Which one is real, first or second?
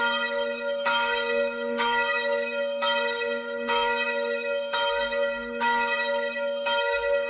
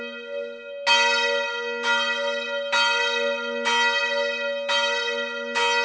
second